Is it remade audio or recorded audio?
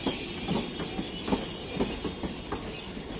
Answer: recorded